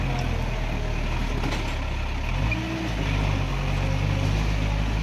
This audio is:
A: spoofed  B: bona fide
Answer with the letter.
B